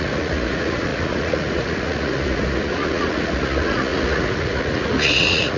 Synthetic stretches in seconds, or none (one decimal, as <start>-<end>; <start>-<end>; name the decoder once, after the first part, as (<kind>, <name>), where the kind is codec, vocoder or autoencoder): 0.0-5.6 (vocoder, Vocos)